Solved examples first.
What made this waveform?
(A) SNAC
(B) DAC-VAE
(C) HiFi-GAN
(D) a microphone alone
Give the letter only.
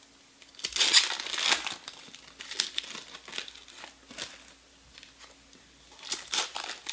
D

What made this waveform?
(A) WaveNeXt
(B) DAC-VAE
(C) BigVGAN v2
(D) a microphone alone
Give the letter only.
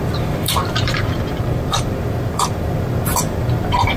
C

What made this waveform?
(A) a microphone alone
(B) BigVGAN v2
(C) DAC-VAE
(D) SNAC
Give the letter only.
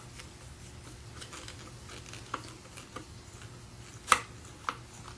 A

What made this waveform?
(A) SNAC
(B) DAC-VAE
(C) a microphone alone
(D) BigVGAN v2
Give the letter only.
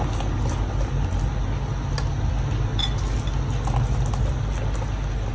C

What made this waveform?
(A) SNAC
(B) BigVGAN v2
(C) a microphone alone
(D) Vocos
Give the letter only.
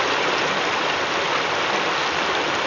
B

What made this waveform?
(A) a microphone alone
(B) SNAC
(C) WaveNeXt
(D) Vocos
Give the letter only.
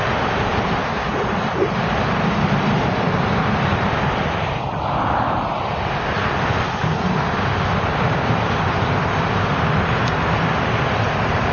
A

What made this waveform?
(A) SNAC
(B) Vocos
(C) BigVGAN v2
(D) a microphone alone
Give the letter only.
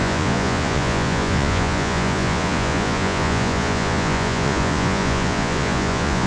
B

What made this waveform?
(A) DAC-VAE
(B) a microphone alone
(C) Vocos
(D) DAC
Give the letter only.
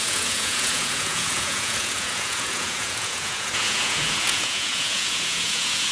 C